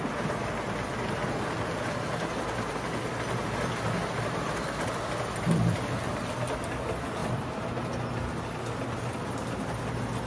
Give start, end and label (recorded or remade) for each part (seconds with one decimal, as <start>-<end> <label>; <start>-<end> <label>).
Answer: 0.0-7.2 recorded; 7.2-8.0 remade; 8.0-10.3 recorded